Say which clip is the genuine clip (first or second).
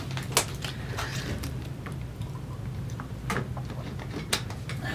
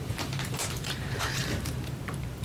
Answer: first